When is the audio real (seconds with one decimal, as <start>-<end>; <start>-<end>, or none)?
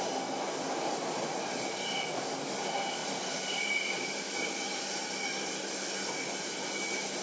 0.0-3.0; 4.5-7.2